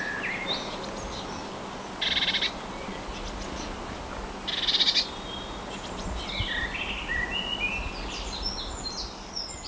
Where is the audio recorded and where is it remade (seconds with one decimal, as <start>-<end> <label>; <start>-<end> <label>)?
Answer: 0.0-9.7 recorded